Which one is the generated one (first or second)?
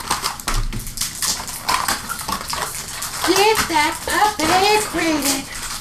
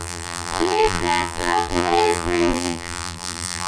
second